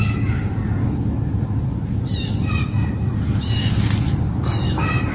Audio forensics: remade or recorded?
recorded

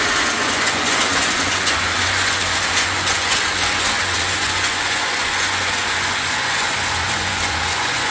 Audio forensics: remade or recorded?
remade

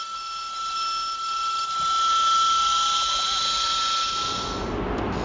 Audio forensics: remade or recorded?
recorded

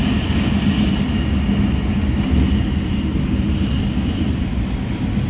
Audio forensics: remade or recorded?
recorded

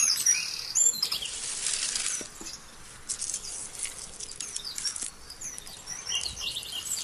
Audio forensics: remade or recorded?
recorded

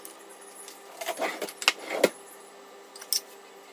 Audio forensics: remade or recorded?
recorded